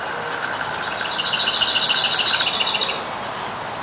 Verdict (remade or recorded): recorded